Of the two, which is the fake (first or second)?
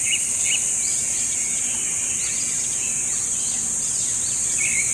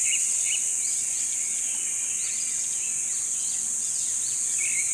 first